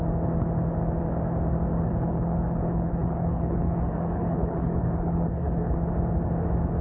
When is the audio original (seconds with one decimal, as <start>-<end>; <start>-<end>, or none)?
0.0-1.7; 5.7-6.8